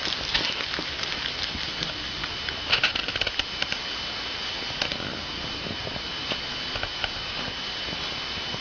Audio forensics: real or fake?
real